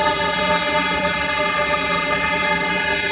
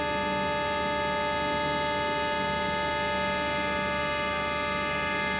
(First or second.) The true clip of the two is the second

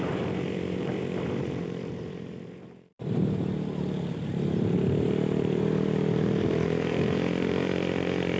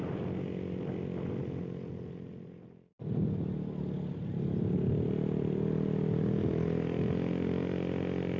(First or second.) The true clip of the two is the second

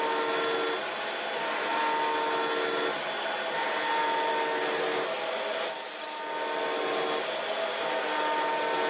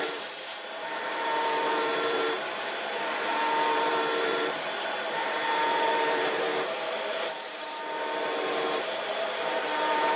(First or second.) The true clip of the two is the first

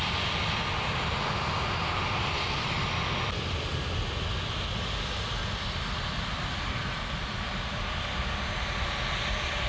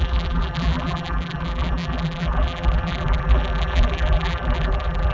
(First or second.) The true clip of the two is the first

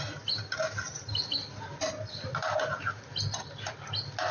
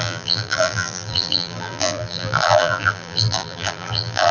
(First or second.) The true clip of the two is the first